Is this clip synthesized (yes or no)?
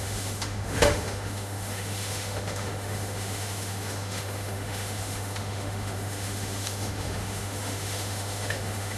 yes